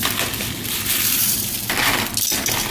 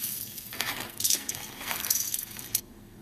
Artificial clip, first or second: second